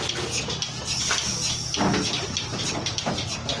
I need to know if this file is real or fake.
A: real